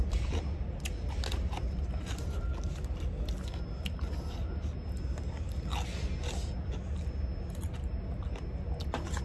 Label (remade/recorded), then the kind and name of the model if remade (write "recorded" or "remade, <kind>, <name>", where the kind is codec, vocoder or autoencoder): recorded